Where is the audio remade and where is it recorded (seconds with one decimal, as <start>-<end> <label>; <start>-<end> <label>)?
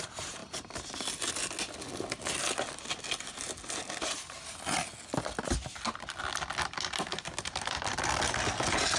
0.0-9.0 recorded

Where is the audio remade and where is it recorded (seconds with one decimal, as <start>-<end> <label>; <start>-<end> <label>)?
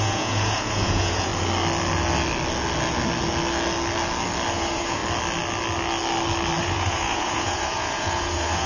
0.0-1.3 remade; 1.3-4.5 recorded; 4.5-5.0 remade; 5.0-6.6 recorded; 6.6-8.7 remade